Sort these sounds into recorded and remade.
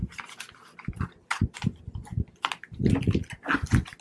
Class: recorded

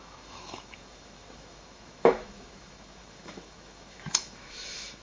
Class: remade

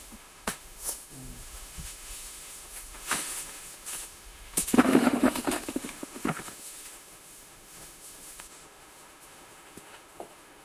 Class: remade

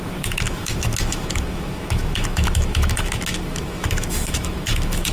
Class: remade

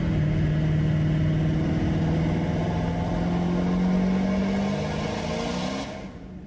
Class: recorded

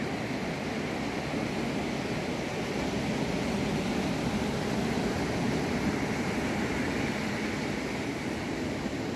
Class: recorded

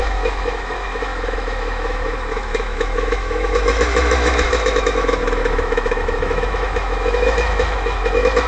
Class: remade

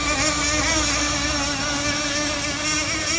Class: recorded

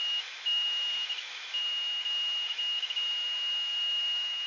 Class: remade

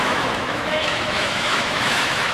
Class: remade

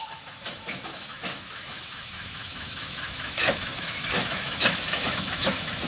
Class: remade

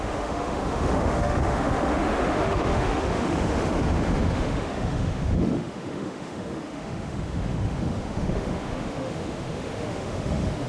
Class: remade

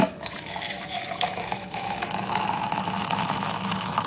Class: remade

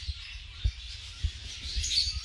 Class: recorded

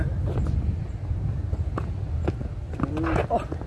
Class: recorded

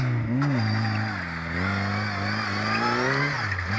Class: recorded